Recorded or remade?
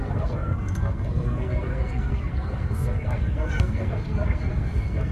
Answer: remade